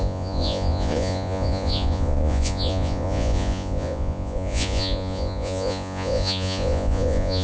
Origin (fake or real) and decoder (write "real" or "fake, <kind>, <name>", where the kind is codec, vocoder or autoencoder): fake, vocoder, Vocos